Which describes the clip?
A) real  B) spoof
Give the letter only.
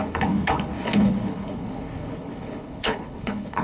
B